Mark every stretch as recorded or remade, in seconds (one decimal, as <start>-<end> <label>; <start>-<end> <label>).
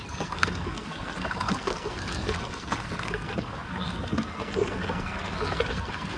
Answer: 0.0-6.2 remade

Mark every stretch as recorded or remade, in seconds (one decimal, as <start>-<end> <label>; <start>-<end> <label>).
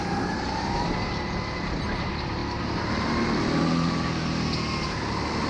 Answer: 0.0-5.5 recorded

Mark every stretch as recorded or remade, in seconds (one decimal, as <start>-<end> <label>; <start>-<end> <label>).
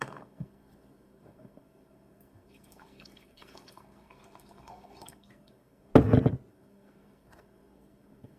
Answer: 0.0-5.9 remade; 5.9-6.5 recorded; 6.5-8.4 remade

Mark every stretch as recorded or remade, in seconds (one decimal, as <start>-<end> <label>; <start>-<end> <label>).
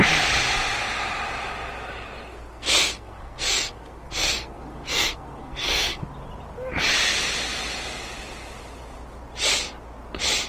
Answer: 0.0-2.3 recorded; 2.3-6.0 remade; 6.0-10.5 recorded